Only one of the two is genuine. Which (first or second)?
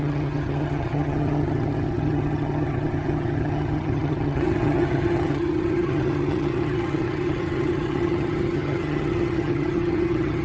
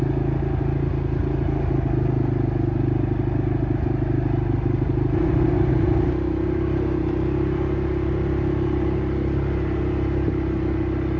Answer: second